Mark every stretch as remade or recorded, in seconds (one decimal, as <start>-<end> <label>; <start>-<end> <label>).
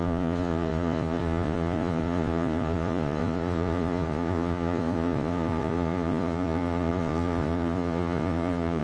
0.0-8.8 remade